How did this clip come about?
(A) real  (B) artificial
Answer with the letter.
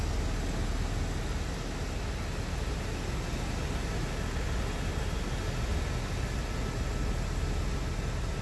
A